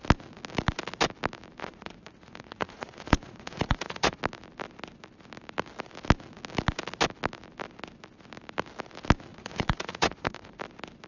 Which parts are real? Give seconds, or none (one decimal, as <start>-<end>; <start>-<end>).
0.0-1.6; 4.2-9.3; 10.6-11.1